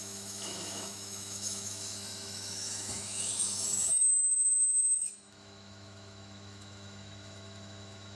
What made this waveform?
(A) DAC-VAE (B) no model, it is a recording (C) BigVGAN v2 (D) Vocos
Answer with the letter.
A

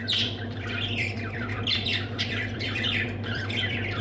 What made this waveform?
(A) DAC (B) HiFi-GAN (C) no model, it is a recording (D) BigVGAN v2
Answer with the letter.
D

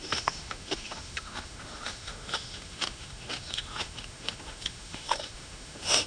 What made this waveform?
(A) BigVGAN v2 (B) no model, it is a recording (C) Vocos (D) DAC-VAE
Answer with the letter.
D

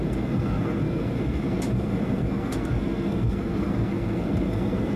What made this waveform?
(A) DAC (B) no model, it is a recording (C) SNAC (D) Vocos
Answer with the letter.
C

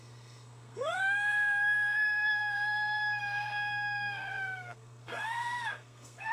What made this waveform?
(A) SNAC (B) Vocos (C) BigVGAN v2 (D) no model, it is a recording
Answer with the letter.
A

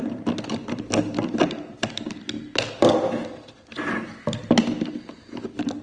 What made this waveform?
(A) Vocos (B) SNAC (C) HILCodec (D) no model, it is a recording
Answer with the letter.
D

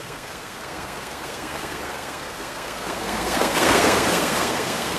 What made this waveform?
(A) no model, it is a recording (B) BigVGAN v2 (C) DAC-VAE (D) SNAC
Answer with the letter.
D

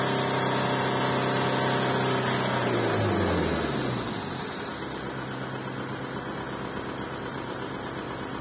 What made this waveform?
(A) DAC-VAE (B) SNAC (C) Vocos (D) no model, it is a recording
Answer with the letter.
D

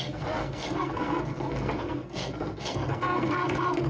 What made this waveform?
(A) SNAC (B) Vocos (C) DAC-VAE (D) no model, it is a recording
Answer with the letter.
A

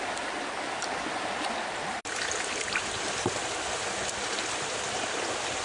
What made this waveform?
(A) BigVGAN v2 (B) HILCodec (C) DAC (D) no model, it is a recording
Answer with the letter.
D